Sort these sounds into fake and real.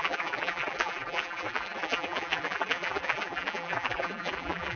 fake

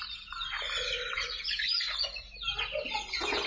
real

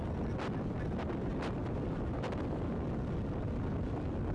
real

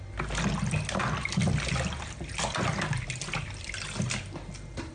real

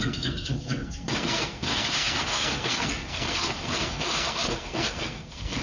fake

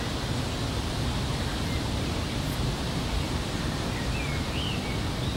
real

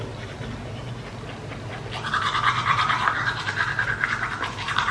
real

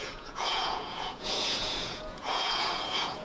fake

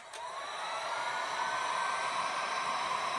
fake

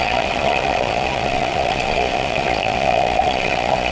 fake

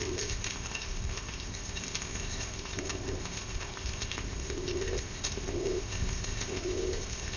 fake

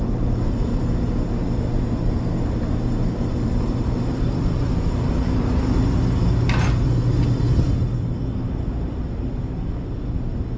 real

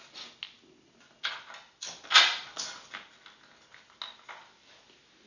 real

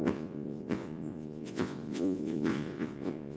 fake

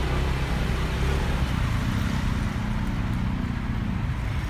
real